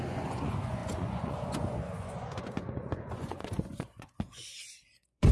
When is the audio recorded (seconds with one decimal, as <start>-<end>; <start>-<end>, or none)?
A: none